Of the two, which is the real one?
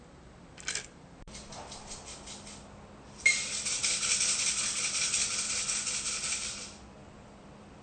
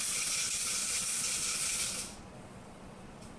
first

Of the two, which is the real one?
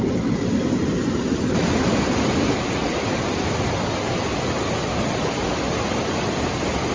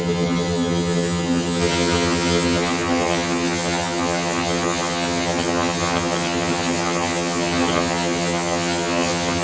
first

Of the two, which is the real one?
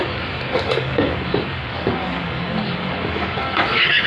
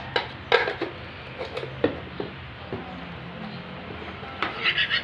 second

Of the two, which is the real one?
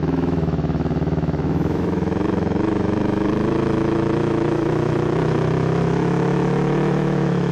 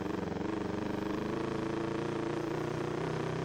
second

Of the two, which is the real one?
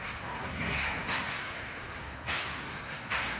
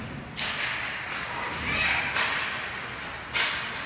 second